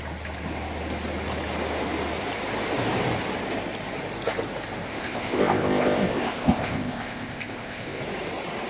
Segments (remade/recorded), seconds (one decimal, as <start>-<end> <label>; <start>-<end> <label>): 0.0-4.9 recorded; 4.9-8.0 remade; 8.0-8.7 recorded